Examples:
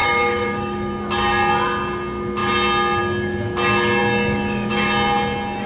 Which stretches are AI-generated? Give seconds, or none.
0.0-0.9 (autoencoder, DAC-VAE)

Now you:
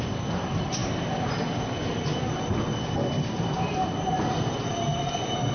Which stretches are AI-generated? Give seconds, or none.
none

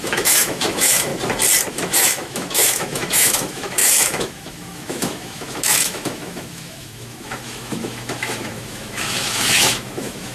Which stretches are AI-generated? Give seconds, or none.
0.0-1.1 (autoencoder, DAC-VAE); 1.7-10.3

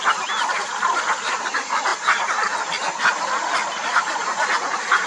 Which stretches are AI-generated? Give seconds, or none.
none

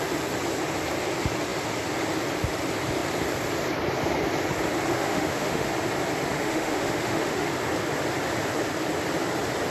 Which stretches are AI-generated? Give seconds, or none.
4.9-5.7 (autoencoder, DAC-VAE); 6.4-7.5